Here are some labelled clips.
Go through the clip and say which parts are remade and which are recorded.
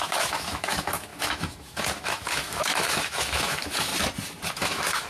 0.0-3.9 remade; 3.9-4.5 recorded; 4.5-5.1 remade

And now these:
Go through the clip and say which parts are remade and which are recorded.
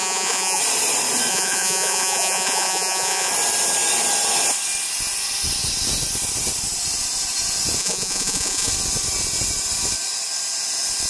0.0-0.6 remade; 0.6-1.3 recorded; 1.3-3.3 remade; 3.3-7.8 recorded; 7.8-8.7 remade; 8.7-11.1 recorded